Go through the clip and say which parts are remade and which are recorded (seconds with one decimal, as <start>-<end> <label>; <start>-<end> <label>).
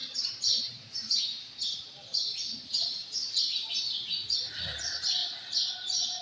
0.0-3.7 remade; 3.7-5.2 recorded; 5.2-5.7 remade; 5.7-6.2 recorded